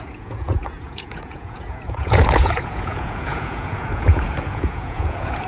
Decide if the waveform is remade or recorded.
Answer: remade